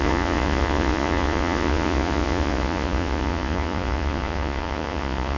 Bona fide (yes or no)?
no